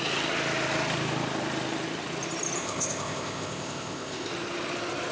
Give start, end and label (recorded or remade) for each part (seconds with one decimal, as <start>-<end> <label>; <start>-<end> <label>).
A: 0.0-2.6 recorded; 2.6-4.3 remade; 4.3-5.1 recorded